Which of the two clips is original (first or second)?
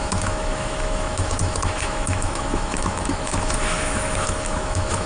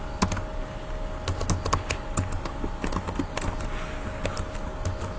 second